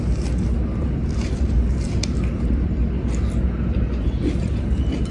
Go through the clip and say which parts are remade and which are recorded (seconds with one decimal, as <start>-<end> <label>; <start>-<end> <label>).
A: 0.0-1.0 recorded; 1.0-3.2 remade; 3.2-5.1 recorded